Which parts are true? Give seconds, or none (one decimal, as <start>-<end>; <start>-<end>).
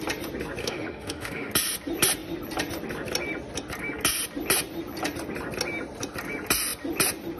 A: 0.0-0.6; 1.5-7.4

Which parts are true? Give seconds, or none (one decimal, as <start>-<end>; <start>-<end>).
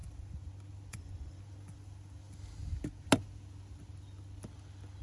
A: 0.0-0.9; 1.4-5.0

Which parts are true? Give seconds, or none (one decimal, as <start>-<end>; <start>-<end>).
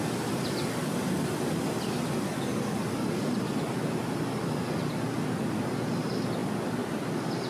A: 0.0-7.5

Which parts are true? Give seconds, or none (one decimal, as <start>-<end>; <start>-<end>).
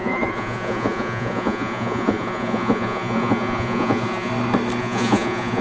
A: 4.3-4.8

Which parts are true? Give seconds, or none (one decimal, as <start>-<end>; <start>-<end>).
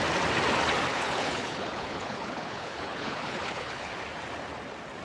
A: 0.0-0.9; 3.9-5.0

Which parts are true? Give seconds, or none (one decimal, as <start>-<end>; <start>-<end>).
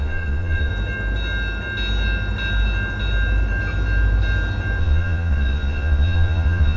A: 0.7-4.8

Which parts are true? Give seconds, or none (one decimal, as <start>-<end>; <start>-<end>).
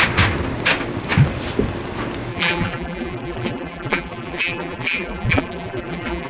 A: 0.0-2.3